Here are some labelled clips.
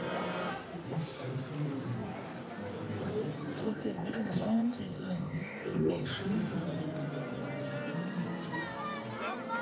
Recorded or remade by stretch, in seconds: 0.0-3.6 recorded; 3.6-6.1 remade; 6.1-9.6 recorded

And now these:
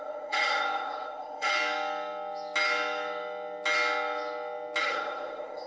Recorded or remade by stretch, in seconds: 0.0-1.5 remade; 1.5-4.8 recorded; 4.8-5.7 remade

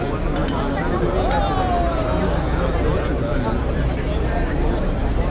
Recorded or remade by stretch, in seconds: 0.0-5.3 recorded

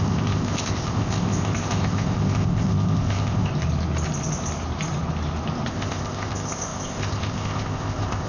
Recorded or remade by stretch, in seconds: 0.0-3.5 remade; 3.5-5.7 recorded; 5.7-8.3 remade